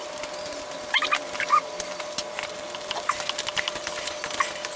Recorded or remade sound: recorded